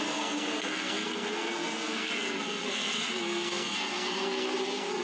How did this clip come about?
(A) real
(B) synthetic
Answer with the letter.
B